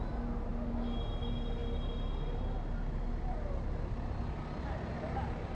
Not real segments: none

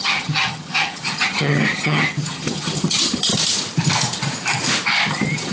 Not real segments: 0.0-3.3; 5.1-5.5

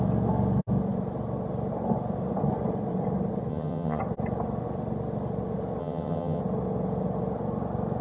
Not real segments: 3.5-4.0; 5.8-6.4

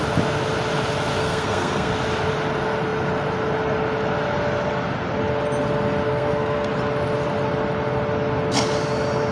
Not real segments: 1.2-1.9; 6.1-6.7

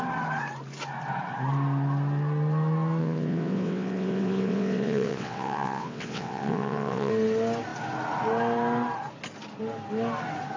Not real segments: 3.0-7.1

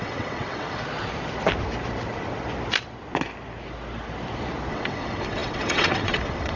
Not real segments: 0.0-0.8; 4.7-6.6

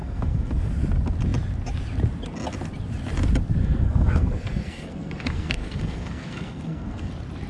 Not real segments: 0.0-0.7; 3.6-7.1

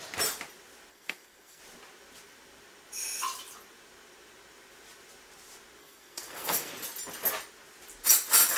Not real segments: 0.9-1.6; 5.8-6.7